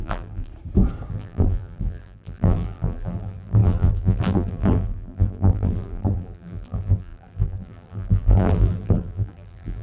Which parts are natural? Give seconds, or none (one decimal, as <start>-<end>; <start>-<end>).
0.5-1.1